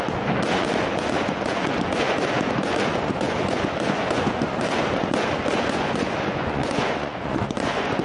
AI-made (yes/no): yes